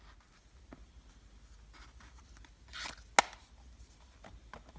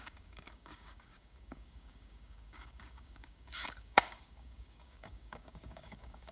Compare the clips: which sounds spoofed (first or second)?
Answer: second